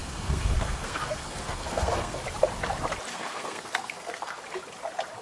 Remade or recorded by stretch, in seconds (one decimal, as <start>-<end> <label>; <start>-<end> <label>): 0.0-2.2 remade; 2.2-3.1 recorded; 3.1-4.4 remade; 4.4-5.2 recorded